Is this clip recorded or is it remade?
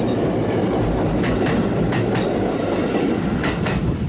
recorded